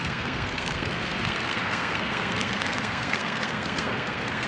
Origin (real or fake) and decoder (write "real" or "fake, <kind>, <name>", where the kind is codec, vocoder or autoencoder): fake, codec, SNAC